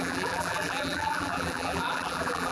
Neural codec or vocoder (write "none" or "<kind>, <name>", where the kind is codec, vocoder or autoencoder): vocoder, BigVGAN v2